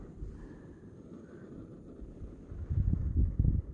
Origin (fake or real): real